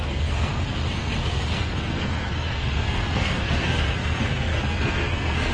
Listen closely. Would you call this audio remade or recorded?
remade